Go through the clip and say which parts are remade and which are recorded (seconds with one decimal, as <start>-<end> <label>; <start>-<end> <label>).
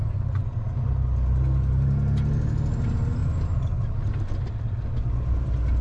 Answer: 0.0-5.8 recorded